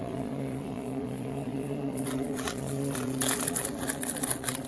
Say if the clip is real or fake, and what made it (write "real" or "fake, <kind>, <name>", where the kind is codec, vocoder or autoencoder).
fake, vocoder, Vocos